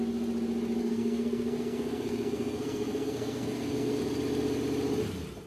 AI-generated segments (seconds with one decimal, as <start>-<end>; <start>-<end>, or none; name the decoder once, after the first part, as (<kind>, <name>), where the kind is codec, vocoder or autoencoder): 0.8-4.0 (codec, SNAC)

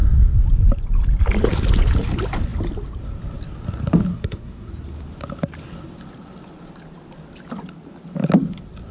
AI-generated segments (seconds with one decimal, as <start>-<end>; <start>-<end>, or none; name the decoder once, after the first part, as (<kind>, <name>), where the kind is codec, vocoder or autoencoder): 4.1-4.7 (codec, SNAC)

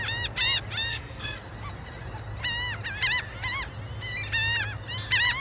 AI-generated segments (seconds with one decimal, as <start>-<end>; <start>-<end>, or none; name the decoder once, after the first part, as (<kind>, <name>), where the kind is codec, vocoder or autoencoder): 0.9-1.4 (codec, SNAC)

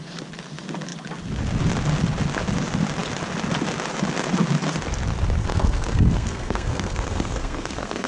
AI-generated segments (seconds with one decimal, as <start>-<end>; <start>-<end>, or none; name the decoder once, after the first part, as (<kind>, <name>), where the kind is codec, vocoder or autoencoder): 5.4-8.1 (codec, SNAC)

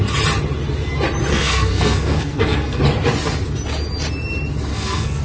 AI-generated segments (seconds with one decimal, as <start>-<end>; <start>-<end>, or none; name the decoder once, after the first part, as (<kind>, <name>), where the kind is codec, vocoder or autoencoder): 1.3-2.8 (codec, SNAC); 4.7-5.2